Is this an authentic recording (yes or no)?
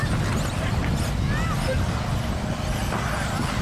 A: yes